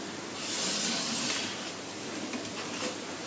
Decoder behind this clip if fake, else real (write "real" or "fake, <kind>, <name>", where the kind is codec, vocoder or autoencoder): real